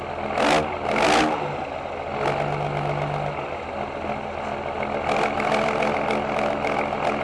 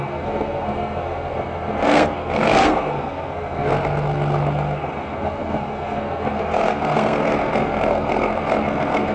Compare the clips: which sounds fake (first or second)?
second